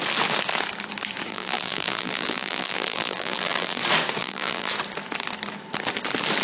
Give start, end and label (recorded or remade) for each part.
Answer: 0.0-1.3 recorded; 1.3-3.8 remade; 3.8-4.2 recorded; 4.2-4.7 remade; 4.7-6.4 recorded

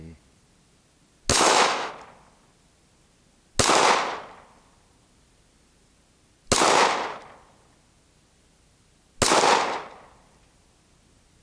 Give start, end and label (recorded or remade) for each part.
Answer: 0.0-1.3 recorded; 1.3-1.9 remade; 1.9-11.4 recorded

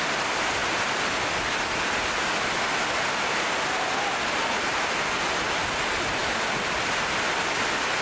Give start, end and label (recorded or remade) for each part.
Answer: 0.0-8.0 recorded

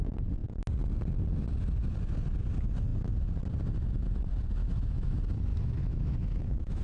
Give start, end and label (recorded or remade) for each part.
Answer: 0.0-4.6 recorded; 4.6-5.1 remade; 5.1-5.5 recorded; 5.5-6.8 remade